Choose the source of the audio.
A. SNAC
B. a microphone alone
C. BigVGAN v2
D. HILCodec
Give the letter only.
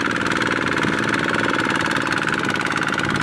B